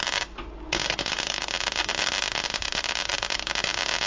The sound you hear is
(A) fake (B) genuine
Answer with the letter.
B